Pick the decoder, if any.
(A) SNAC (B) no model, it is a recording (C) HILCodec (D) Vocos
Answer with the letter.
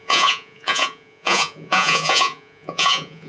D